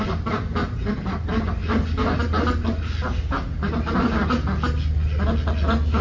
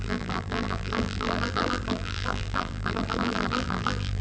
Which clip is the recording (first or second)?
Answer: first